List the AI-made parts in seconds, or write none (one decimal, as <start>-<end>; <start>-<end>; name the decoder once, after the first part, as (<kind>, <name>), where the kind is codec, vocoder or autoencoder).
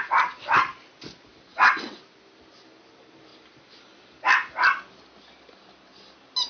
1.5-2.0 (vocoder, WaveNeXt)